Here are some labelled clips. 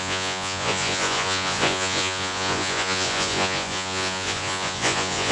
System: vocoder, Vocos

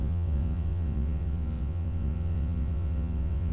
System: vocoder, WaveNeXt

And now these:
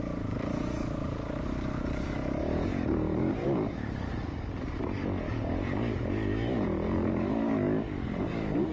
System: codec, DAC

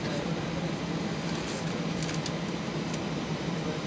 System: none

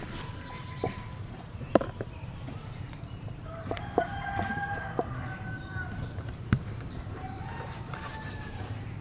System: vocoder, BigVGAN v2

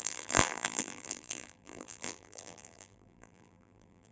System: vocoder, BigVGAN v2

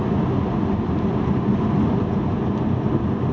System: none